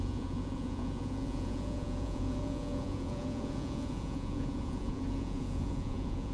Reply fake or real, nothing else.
fake